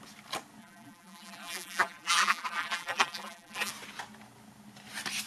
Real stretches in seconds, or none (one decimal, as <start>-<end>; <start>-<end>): 0.0-0.6; 3.7-5.3